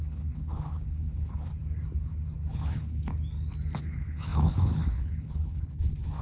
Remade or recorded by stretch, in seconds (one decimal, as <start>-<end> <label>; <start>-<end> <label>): 0.0-1.5 remade; 1.5-2.5 recorded; 2.5-3.1 remade; 3.1-3.8 recorded; 3.8-6.2 remade